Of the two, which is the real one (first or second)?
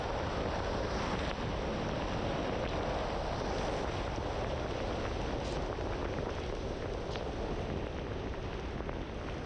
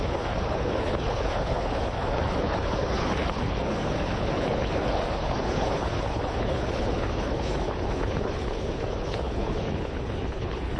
first